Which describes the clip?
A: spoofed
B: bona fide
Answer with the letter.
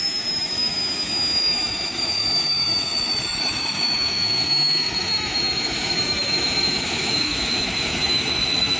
A